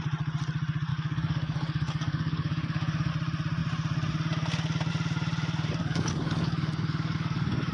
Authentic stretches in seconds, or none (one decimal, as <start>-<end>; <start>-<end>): 0.0-0.9; 3.1-5.8